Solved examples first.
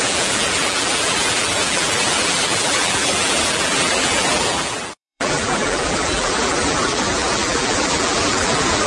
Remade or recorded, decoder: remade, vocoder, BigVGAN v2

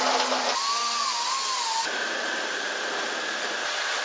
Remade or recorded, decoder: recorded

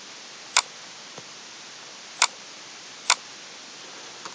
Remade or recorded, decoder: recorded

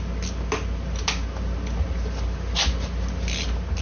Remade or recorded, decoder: recorded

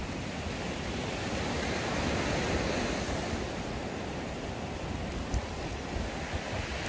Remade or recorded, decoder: recorded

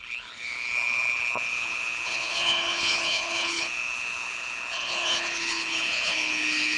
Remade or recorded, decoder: remade, codec, HILCodec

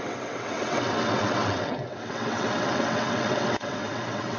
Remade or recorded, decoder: remade, vocoder, WaveNeXt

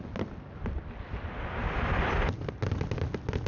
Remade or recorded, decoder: recorded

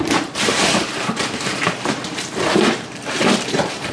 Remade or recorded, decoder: remade, vocoder, BigVGAN v2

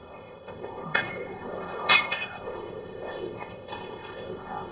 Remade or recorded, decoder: remade, codec, ZipCodec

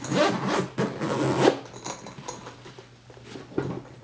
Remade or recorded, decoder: recorded